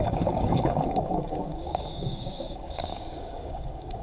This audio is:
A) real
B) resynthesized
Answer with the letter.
B